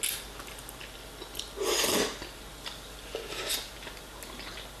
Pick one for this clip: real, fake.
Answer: real